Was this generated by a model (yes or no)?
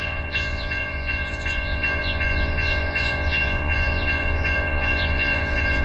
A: yes